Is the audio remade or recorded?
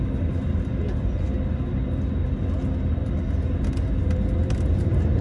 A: recorded